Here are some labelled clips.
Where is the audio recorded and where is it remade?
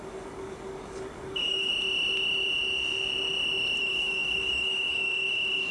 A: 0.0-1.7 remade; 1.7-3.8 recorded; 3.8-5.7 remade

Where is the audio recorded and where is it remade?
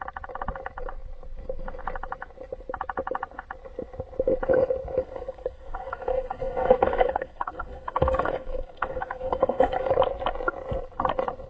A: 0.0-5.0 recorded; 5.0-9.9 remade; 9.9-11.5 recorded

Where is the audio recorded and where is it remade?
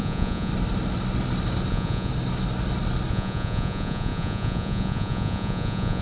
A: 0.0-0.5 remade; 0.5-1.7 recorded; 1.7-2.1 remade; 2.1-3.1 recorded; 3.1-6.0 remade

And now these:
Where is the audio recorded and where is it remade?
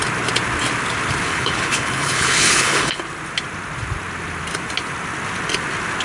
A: 0.0-1.3 recorded; 1.3-3.0 remade; 3.0-6.0 recorded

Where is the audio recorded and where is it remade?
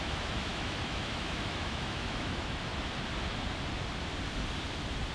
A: 0.0-2.7 remade; 2.7-5.1 recorded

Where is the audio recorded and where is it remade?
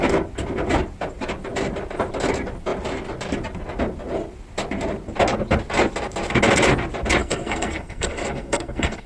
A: 0.0-7.2 recorded; 7.2-9.1 remade